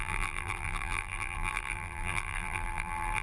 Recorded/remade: remade